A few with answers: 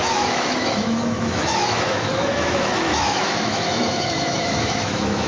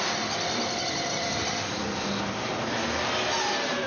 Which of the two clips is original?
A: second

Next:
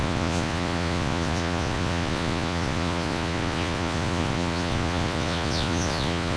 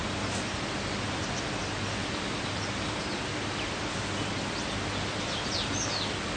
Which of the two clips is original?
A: second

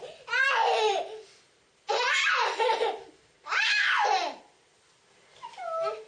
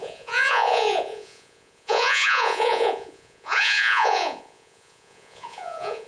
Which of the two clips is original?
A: first